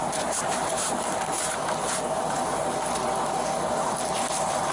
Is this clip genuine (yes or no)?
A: yes